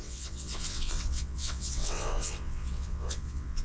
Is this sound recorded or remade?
remade